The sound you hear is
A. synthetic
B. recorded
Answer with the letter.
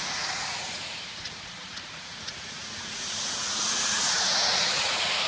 A